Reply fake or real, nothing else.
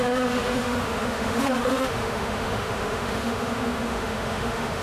fake